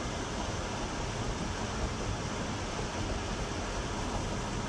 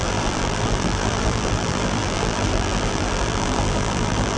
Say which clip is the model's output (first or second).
second